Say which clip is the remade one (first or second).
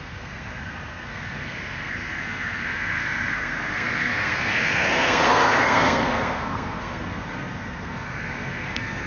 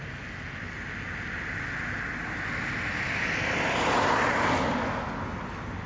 first